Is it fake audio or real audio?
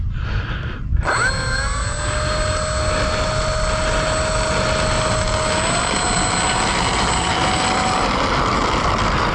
real